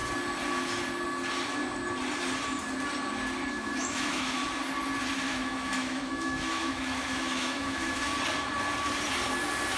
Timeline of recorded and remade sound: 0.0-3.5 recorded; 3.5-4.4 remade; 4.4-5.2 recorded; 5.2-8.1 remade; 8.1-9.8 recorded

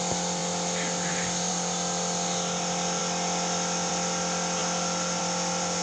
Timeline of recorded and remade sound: 0.0-5.8 recorded

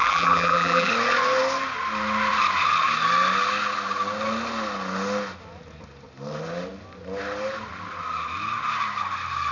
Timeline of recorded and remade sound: 0.0-0.9 remade; 0.9-9.5 recorded

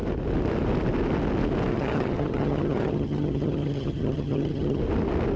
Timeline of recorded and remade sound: 0.0-1.7 recorded; 1.7-4.8 remade; 4.8-5.4 recorded